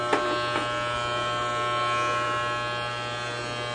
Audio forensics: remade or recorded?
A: recorded